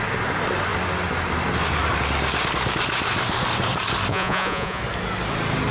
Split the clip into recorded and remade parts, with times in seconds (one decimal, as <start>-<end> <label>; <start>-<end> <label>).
0.0-4.1 recorded; 4.1-4.8 remade; 4.8-5.7 recorded